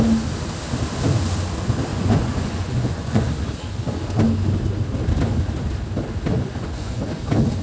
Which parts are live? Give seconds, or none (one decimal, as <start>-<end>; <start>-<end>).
0.0-1.9; 3.4-6.3; 7.0-7.6